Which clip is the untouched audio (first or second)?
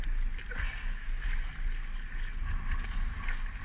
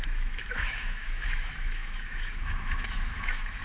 first